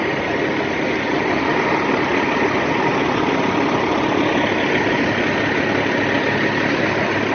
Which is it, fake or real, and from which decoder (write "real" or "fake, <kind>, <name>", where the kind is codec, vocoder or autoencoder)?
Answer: real